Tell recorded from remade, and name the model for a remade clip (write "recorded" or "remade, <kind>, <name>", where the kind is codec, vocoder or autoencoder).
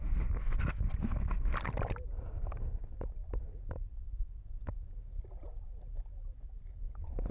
recorded